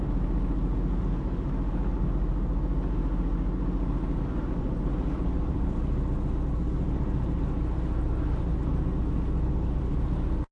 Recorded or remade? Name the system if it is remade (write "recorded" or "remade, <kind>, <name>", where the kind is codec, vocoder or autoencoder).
recorded